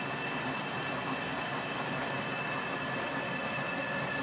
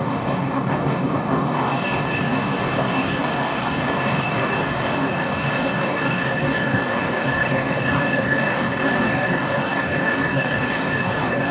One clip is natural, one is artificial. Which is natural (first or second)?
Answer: first